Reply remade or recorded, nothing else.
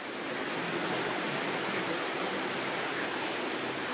remade